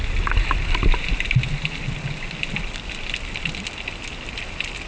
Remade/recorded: recorded